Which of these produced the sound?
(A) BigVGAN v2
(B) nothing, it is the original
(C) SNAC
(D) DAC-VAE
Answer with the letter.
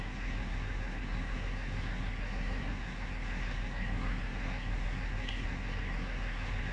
C